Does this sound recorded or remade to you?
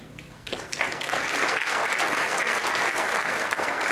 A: remade